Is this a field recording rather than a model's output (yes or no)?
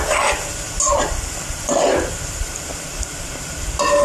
yes